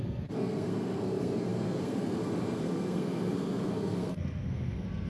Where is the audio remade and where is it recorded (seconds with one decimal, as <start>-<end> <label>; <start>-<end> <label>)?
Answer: 0.0-5.1 remade